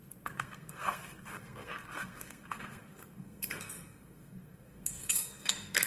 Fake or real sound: fake